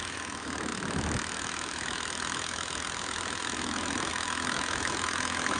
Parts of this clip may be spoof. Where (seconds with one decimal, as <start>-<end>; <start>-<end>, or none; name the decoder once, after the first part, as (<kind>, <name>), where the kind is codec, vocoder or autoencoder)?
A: 0.0-5.6 (autoencoder, DAC-VAE)